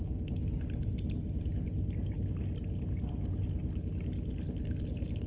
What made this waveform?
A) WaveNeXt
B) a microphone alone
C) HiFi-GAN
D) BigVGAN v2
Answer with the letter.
B